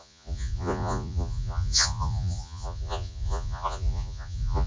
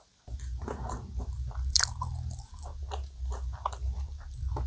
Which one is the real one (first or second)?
second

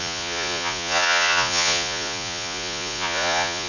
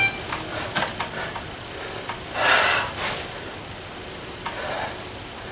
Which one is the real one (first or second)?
second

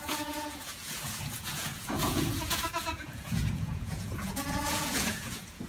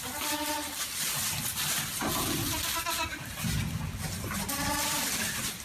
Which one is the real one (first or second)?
second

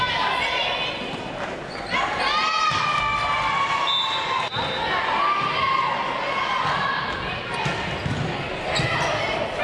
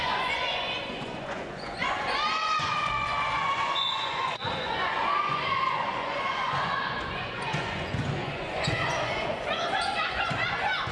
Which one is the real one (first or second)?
first